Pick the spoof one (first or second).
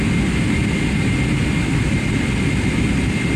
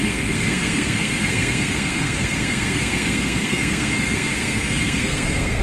second